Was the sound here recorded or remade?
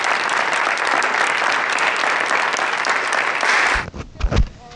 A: recorded